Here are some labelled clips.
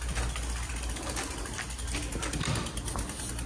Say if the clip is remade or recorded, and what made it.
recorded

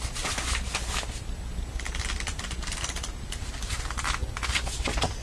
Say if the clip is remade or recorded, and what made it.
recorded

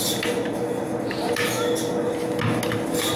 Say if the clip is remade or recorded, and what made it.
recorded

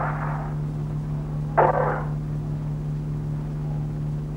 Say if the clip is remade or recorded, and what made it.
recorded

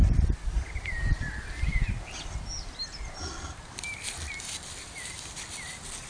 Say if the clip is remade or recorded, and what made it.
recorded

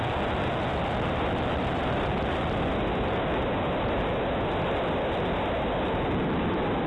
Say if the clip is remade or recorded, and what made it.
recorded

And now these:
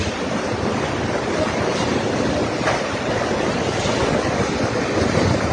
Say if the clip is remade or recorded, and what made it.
recorded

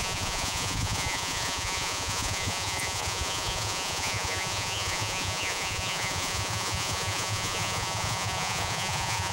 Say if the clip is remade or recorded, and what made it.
remade, vocoder, Vocos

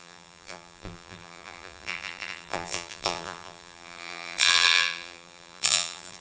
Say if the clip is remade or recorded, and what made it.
remade, vocoder, BigVGAN v2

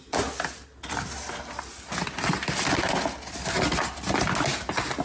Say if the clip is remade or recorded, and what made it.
recorded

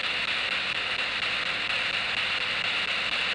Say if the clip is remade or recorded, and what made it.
recorded